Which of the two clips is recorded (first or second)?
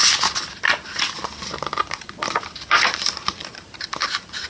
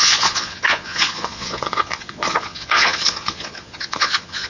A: first